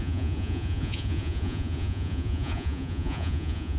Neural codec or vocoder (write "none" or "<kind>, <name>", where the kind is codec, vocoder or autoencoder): vocoder, Vocos